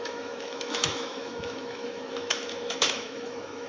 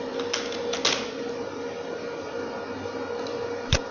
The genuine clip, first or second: second